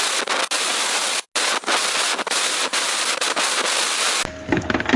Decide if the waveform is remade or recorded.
recorded